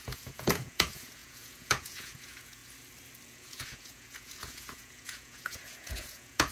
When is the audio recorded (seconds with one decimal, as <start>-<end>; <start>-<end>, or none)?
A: 2.6-3.3